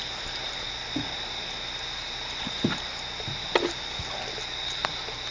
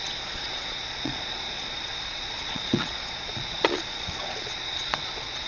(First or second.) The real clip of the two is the first